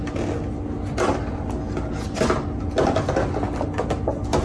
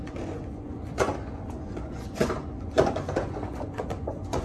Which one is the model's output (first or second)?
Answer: second